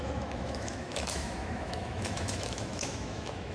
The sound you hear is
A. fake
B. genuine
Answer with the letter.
A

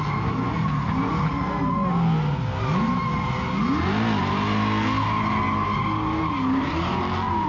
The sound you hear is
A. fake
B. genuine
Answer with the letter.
B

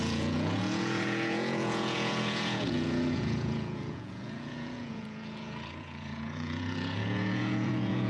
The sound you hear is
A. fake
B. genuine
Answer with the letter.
A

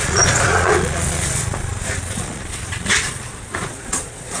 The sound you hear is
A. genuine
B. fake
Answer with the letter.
B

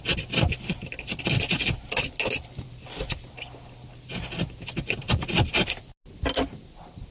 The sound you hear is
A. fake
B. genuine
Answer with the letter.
B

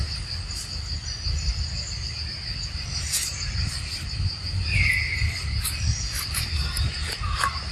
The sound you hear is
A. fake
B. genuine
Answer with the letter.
B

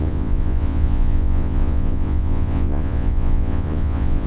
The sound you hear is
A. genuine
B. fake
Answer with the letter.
B